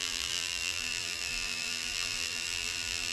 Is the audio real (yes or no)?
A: no